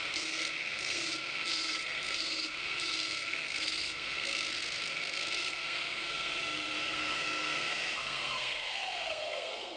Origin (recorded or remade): remade